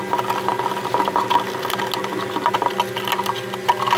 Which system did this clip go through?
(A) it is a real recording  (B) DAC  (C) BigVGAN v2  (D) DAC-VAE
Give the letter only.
A